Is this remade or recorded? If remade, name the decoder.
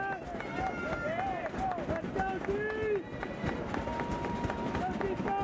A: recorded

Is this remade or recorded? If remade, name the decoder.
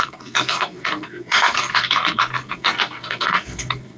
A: remade, codec, SNAC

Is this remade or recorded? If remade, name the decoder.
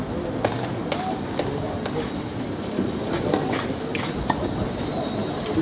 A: recorded